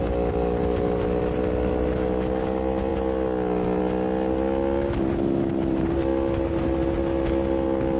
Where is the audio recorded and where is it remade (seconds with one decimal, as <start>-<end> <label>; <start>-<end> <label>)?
0.0-8.0 recorded